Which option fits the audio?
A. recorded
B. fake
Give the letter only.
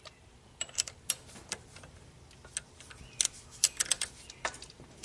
A